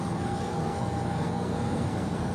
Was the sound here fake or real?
fake